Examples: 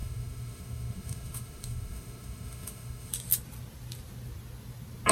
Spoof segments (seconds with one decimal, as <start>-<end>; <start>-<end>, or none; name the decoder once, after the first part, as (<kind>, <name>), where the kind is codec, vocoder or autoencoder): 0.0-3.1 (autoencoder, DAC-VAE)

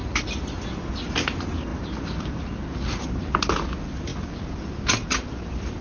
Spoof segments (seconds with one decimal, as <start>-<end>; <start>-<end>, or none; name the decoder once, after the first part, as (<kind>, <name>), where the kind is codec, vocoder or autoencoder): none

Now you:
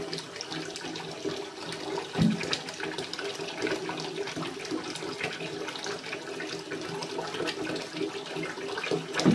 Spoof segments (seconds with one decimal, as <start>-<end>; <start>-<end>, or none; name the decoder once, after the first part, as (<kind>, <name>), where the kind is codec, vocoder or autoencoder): none

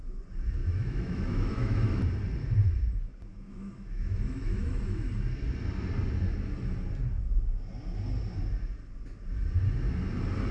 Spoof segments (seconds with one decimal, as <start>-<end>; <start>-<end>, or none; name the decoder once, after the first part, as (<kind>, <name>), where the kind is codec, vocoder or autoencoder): 0.6-2.0 (autoencoder, DAC-VAE); 3.3-5.1

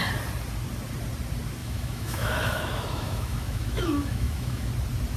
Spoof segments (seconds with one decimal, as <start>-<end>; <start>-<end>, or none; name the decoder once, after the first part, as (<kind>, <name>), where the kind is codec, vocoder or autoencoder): 1.6-4.7 (autoencoder, DAC-VAE)